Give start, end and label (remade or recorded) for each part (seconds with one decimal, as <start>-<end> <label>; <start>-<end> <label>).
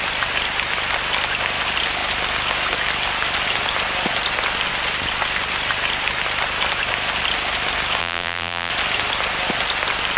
0.0-8.0 recorded; 8.0-8.7 remade; 8.7-10.2 recorded